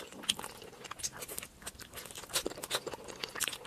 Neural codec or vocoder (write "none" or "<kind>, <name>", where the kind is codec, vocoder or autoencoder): none